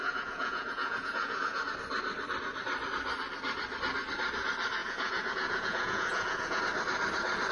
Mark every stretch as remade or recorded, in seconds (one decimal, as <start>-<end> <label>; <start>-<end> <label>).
0.0-1.6 remade; 1.6-4.8 recorded; 4.8-6.6 remade; 6.6-7.5 recorded